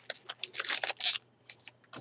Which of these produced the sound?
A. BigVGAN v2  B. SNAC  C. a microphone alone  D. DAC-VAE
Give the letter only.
C